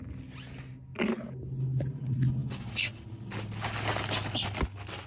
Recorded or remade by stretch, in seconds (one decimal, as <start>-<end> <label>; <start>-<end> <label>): 0.0-5.1 recorded

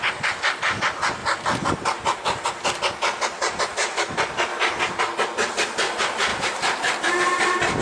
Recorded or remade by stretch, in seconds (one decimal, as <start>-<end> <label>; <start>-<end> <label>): 0.0-4.5 recorded; 4.5-5.0 remade; 5.0-7.8 recorded

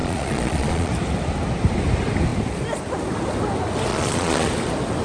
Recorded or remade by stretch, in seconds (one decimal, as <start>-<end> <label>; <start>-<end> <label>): 0.0-0.9 remade; 0.9-3.9 recorded; 3.9-4.5 remade; 4.5-5.0 recorded

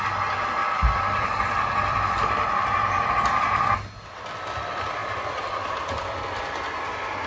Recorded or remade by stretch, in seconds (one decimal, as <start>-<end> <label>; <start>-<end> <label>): 0.0-0.6 recorded; 0.6-3.1 remade; 3.1-5.0 recorded; 5.0-6.4 remade; 6.4-7.3 recorded

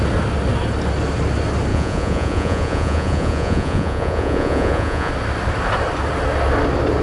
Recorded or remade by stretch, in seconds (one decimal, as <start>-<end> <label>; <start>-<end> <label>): 0.0-1.7 recorded; 1.7-5.1 remade; 5.1-7.0 recorded

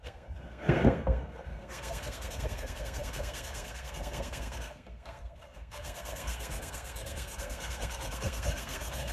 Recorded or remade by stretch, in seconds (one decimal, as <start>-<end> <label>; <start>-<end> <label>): 0.0-9.1 remade